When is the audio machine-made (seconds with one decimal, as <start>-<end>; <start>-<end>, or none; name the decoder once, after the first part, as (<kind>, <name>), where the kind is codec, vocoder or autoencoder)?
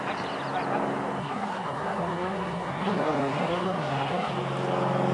1.2-4.3 (codec, SNAC)